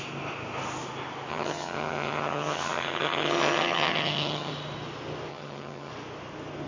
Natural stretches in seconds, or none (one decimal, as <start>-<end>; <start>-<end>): 0.0-1.3; 4.5-5.3; 5.9-6.7